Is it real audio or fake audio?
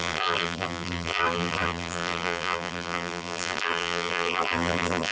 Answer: fake